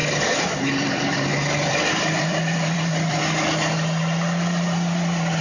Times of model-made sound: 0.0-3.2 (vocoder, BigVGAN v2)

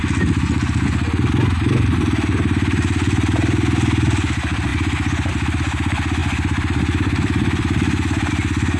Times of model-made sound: 6.2-8.3 (vocoder, BigVGAN v2)

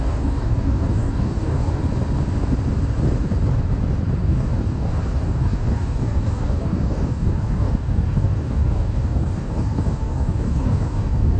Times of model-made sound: 0.0-1.8 (codec, DAC); 4.2-11.4

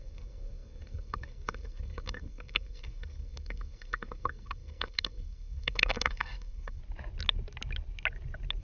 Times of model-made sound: 0.0-6.8 (codec, SNAC)

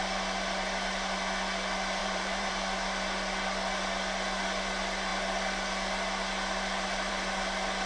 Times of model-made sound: 2.0-2.5 (vocoder, BigVGAN v2)

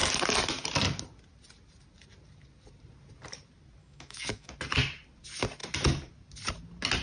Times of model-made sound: 3.8-4.5 (autoencoder, DAC-VAE)

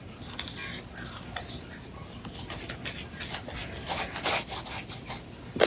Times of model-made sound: none